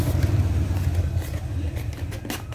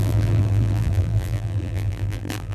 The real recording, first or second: first